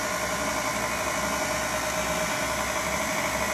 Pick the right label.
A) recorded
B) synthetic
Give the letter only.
A